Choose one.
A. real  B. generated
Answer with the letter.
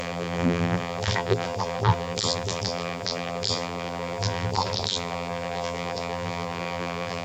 B